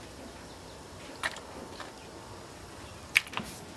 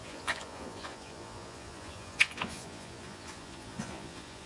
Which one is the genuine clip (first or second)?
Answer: first